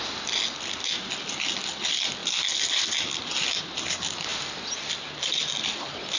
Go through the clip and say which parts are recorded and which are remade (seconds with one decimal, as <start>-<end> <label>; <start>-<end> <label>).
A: 0.0-2.2 recorded; 2.2-2.9 remade; 2.9-6.2 recorded

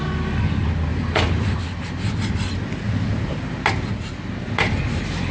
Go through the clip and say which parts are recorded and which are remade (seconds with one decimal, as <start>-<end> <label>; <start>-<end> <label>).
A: 0.0-5.3 recorded